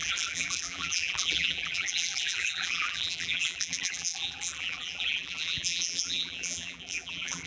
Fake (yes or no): yes